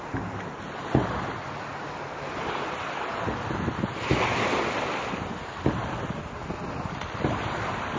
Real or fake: real